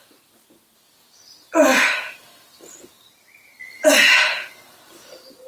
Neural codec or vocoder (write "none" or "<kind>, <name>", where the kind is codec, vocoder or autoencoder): none